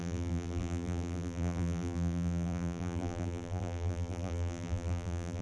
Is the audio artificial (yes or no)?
yes